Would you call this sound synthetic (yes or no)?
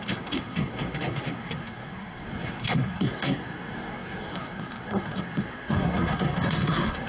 yes